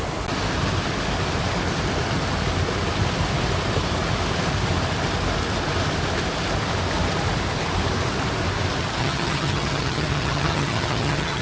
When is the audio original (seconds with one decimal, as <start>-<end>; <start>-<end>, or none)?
0.0-9.0